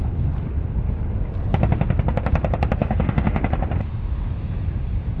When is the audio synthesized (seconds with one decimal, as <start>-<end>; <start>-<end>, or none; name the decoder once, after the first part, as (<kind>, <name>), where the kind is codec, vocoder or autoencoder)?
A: 2.8-3.4 (autoencoder, DAC-VAE)